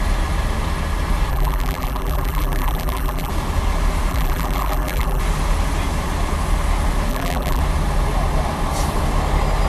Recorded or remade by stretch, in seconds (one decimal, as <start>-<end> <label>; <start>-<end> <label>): 0.0-1.3 recorded; 1.3-3.3 remade; 3.3-4.1 recorded; 4.1-5.2 remade; 5.2-7.1 recorded; 7.1-7.6 remade; 7.6-9.7 recorded